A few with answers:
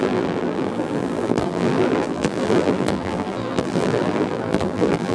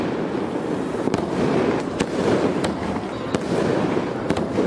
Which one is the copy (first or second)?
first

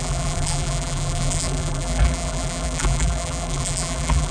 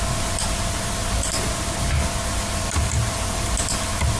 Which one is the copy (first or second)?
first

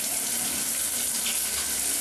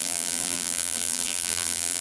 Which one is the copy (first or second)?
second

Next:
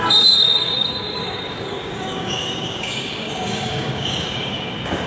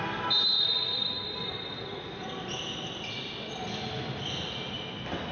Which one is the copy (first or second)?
first